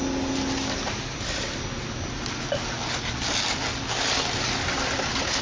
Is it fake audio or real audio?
real